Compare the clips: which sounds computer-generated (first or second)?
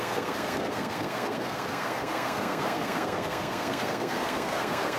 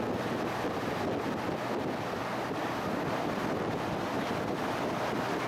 first